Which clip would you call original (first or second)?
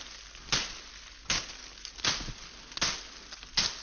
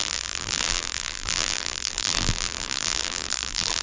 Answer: first